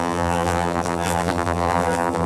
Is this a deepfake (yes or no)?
yes